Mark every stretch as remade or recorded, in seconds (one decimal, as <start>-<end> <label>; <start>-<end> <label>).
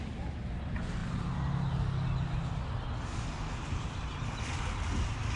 0.0-5.4 recorded